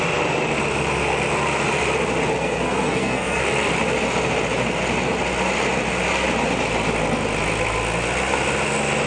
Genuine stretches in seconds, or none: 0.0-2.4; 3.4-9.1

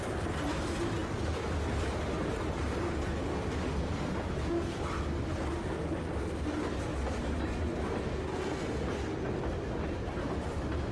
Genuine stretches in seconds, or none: 0.0-10.9

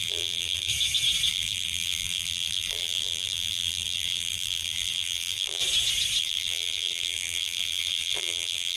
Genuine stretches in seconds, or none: 0.7-1.3; 5.6-6.2

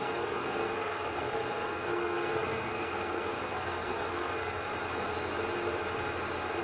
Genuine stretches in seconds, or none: 4.7-6.6

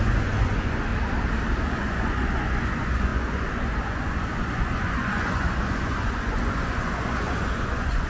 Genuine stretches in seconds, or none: 0.9-1.7

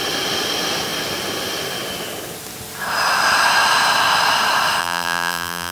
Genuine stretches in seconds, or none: 0.0-4.8

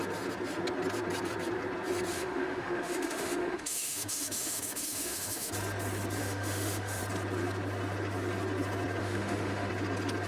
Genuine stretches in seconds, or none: 0.0-2.1; 5.5-6.2; 7.0-9.0; 9.7-10.3